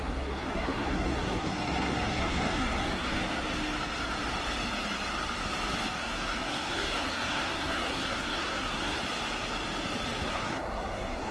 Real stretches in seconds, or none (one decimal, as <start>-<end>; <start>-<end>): 3.1-6.0; 9.0-10.3